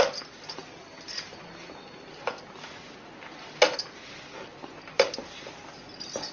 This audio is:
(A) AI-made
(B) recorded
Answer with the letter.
B